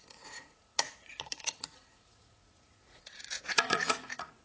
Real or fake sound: fake